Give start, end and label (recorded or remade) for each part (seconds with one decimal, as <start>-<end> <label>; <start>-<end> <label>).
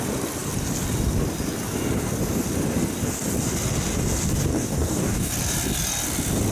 0.0-4.5 recorded; 4.5-5.3 remade; 5.3-6.5 recorded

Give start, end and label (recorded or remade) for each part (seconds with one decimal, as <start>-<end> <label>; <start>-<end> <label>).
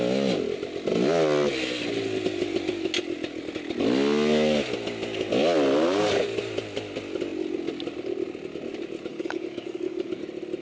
0.0-9.1 recorded; 9.1-10.1 remade; 10.1-10.6 recorded